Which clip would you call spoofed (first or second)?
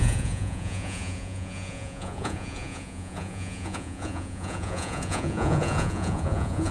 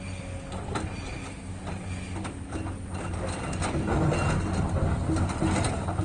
first